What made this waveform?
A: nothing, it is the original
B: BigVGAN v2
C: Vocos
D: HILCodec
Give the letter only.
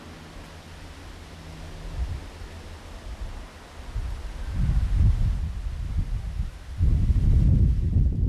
A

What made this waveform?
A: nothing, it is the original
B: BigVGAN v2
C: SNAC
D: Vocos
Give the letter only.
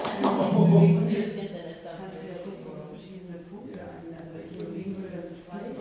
A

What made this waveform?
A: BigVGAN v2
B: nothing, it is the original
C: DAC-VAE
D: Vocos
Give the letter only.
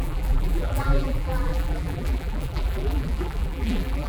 A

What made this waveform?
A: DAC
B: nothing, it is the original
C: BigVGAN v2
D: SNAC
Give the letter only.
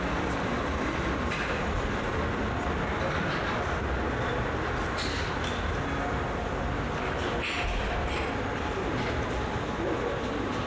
B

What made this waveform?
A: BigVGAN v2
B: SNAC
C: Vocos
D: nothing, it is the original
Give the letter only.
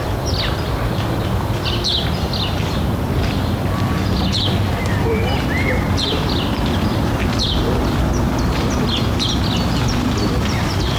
A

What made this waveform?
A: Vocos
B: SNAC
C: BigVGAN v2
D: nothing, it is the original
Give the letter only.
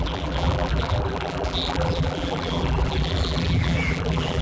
C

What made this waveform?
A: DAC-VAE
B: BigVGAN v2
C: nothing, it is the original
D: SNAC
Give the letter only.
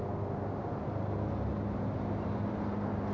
C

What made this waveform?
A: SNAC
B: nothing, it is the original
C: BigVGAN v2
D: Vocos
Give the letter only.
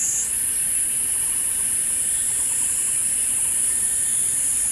B